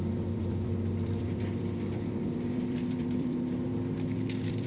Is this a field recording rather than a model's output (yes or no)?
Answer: no